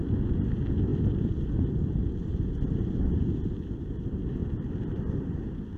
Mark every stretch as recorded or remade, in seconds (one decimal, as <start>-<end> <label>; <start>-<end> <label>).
0.0-5.8 recorded